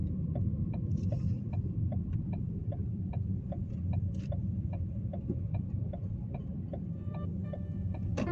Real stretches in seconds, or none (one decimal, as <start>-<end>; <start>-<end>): none